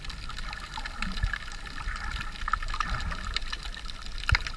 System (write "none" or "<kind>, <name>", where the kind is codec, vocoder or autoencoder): none